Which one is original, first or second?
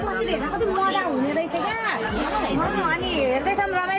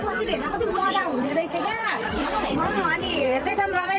first